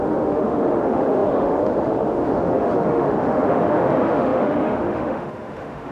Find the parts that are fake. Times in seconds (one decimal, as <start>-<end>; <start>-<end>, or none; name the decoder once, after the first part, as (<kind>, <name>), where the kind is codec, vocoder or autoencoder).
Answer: 0.0-5.9 (autoencoder, DAC-VAE)